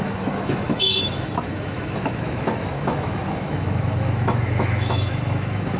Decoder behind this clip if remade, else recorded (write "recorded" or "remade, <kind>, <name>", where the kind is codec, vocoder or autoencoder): remade, autoencoder, DAC-VAE